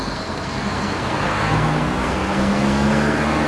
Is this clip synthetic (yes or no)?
yes